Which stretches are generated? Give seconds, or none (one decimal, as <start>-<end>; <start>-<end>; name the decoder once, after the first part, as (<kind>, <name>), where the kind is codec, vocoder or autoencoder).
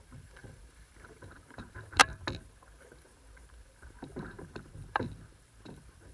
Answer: 0.0-2.0 (vocoder, BigVGAN v2); 3.0-6.1